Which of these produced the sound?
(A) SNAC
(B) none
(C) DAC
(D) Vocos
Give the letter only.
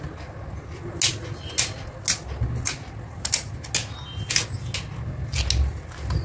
B